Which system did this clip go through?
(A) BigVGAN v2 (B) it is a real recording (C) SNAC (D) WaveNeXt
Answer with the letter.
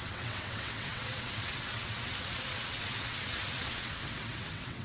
D